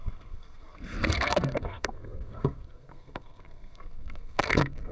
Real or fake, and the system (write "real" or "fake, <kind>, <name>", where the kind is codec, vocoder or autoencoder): fake, codec, SNAC